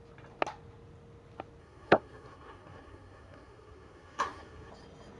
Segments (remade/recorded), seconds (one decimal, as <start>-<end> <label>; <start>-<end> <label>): 0.0-1.6 recorded; 1.6-4.7 remade; 4.7-5.2 recorded